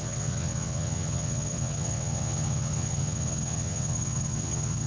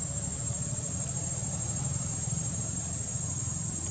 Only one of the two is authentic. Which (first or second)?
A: second